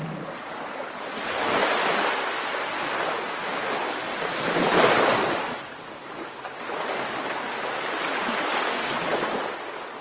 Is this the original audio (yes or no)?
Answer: yes